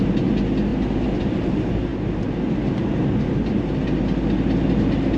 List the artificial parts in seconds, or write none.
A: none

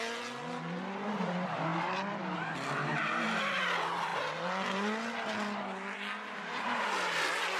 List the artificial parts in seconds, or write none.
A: 1.7-3.4 (vocoder, BigVGAN v2)